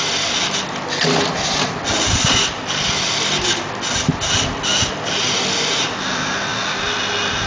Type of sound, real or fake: real